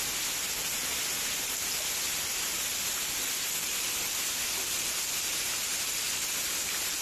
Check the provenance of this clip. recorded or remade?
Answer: recorded